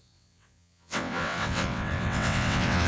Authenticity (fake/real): fake